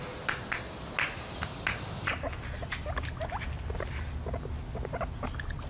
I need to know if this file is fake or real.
real